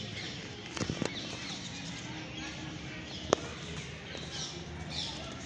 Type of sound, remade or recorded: recorded